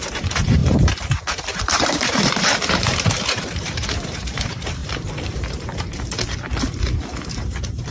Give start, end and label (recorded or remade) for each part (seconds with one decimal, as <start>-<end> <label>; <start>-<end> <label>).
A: 0.0-4.8 remade; 4.8-7.3 recorded; 7.3-7.9 remade